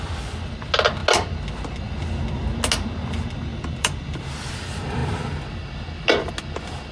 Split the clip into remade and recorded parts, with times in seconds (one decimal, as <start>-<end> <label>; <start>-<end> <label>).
0.0-3.5 recorded; 3.5-4.5 remade; 4.5-6.9 recorded